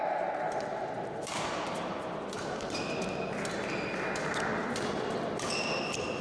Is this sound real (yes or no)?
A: yes